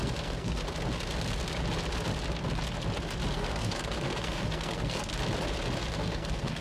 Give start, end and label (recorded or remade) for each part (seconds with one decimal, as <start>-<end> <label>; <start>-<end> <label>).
0.0-0.6 remade; 0.6-3.3 recorded; 3.3-5.1 remade; 5.1-5.9 recorded; 5.9-6.6 remade